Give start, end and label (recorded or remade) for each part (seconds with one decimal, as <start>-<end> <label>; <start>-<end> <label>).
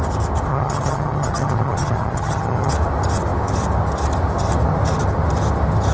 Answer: 0.0-0.5 recorded; 0.5-2.7 remade; 2.7-5.9 recorded